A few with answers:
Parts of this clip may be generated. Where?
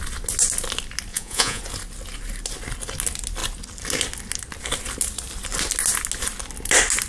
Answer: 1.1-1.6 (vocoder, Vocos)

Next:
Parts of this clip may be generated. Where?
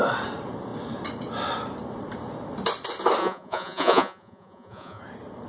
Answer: 3.2-5.0 (vocoder, Vocos)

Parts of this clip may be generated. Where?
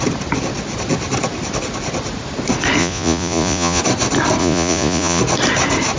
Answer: 2.8-3.8 (vocoder, Vocos); 4.4-5.2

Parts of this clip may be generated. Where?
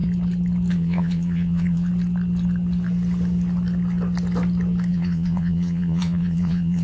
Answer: 0.7-1.9 (vocoder, Vocos); 4.9-6.8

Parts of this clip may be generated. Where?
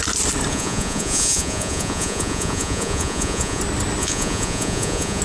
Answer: 0.5-3.6 (vocoder, Vocos); 4.0-5.2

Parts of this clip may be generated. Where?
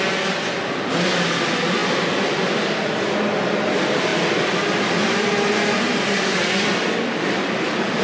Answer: none